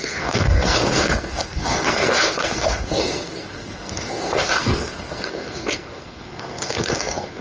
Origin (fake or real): fake